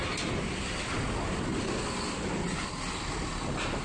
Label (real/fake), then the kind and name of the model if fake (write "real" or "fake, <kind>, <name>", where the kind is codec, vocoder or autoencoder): real